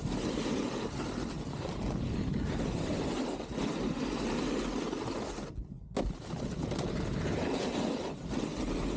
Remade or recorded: recorded